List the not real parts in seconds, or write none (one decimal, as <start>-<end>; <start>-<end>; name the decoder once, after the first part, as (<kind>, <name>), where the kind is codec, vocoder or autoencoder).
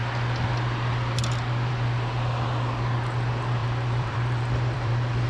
3.6-5.3 (vocoder, BigVGAN v2)